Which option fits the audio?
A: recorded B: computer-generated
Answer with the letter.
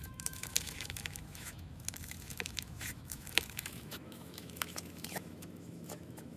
B